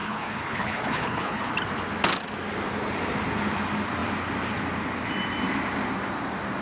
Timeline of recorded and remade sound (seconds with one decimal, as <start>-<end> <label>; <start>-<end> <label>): 0.0-1.5 remade; 1.5-6.6 recorded